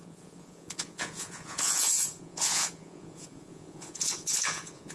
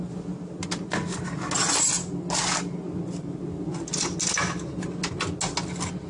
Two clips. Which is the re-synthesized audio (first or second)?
first